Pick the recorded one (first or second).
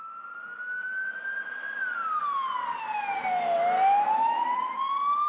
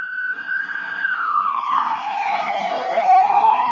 first